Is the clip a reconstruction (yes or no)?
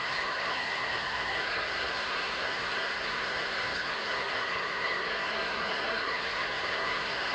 yes